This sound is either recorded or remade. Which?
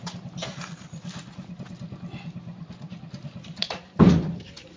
remade